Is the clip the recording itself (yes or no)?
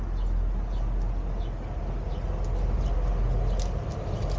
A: yes